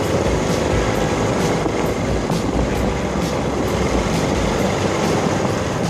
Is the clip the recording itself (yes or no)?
yes